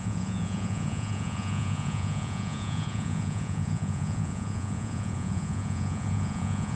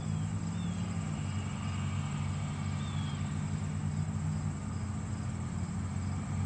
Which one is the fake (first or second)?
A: first